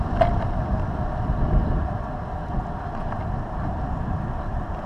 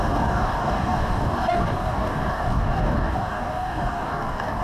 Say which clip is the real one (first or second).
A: first